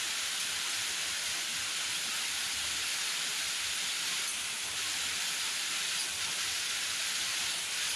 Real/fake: real